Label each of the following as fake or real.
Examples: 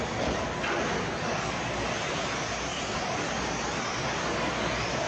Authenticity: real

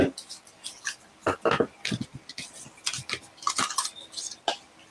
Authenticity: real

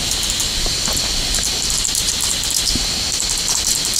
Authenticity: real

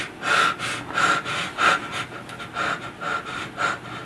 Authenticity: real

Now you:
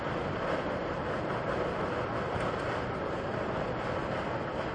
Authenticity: real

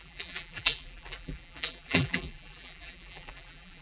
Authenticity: fake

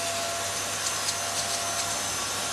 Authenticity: real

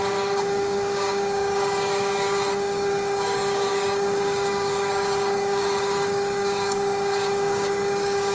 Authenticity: fake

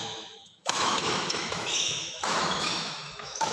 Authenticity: fake